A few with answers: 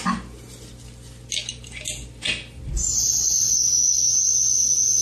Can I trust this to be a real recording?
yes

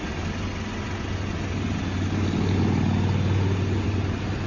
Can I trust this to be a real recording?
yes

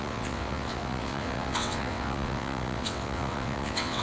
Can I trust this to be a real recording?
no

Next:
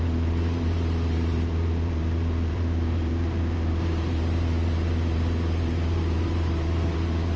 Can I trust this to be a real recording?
no